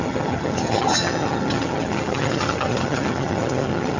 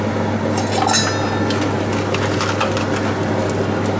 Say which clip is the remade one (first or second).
first